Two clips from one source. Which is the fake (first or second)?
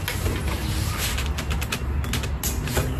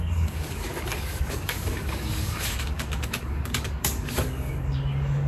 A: second